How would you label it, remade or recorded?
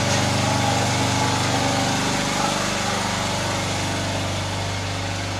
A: recorded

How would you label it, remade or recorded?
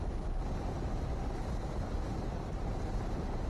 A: recorded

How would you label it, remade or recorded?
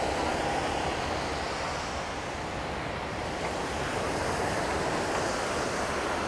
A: recorded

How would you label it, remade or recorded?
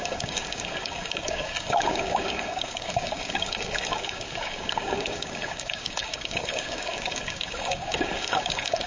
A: remade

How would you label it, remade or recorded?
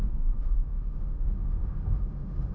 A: remade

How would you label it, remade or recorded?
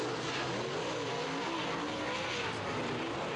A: recorded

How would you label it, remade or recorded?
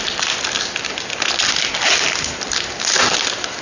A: recorded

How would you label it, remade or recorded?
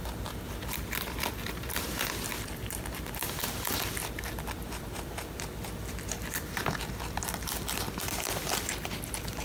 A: remade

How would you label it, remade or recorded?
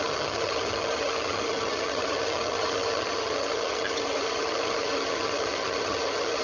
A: remade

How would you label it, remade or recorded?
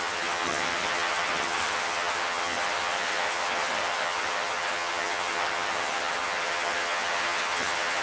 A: remade